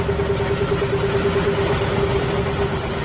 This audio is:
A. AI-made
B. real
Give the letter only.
B